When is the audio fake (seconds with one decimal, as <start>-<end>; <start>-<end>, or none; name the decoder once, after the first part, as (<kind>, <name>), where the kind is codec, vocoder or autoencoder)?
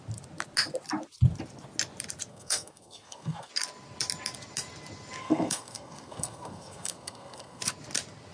2.3-3.5 (codec, SNAC); 5.2-7.6